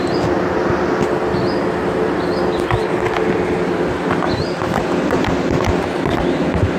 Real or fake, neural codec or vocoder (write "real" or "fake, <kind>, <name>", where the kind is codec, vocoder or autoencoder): real